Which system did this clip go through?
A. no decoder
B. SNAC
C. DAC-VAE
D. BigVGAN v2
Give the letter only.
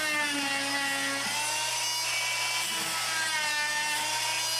A